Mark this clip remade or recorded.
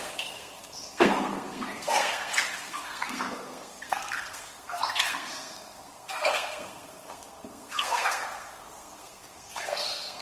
remade